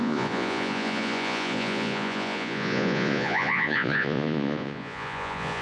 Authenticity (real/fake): fake